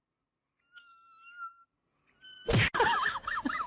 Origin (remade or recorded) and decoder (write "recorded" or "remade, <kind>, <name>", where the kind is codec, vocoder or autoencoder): recorded